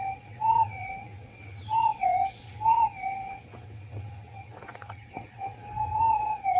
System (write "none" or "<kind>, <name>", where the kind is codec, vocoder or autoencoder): vocoder, WaveNeXt